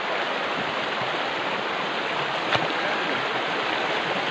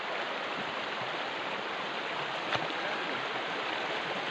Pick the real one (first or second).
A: first